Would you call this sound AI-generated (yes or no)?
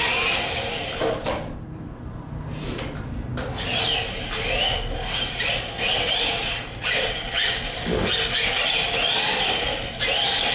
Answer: no